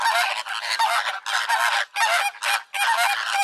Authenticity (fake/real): real